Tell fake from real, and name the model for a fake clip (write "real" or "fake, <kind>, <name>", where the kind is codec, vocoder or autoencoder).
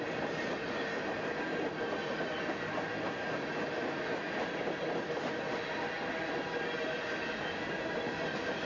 real